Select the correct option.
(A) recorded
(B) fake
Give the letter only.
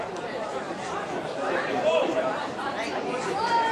B